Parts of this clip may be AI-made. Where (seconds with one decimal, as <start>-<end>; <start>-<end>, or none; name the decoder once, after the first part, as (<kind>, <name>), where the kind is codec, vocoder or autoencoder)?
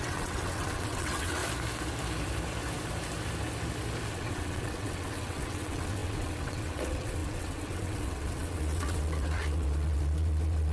0.0-1.4 (vocoder, WaveNeXt); 4.1-10.7